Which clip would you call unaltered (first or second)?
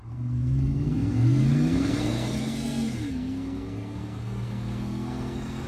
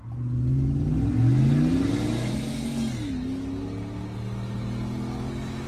second